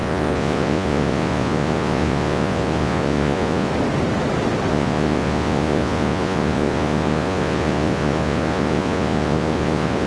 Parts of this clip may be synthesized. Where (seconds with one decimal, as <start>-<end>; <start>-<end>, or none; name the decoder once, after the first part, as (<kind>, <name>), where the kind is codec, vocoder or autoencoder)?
0.0-3.7 (vocoder, Vocos); 4.7-10.1